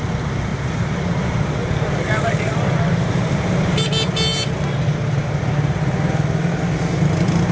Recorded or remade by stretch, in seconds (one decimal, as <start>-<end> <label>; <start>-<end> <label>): 0.0-0.5 recorded; 0.5-3.9 remade; 3.9-7.5 recorded